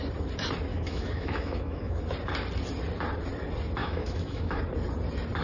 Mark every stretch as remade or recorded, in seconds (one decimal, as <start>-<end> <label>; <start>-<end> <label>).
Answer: 0.0-0.7 recorded; 0.7-2.0 remade; 2.0-3.8 recorded; 3.8-4.6 remade; 4.6-5.4 recorded